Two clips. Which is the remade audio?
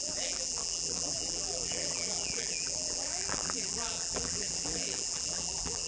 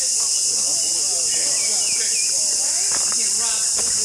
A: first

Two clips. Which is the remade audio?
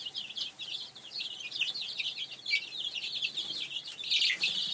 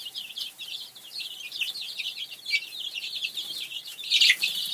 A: second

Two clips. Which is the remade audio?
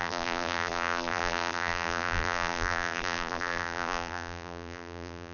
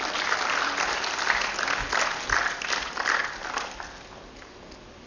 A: first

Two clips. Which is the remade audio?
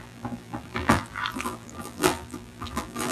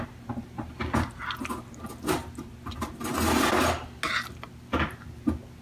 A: first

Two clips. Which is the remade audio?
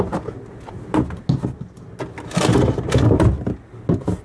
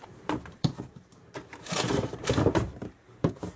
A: second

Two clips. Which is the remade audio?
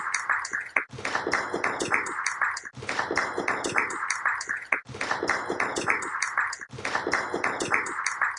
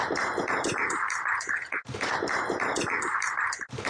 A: second